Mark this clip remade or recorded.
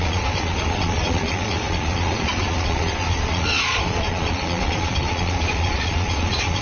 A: remade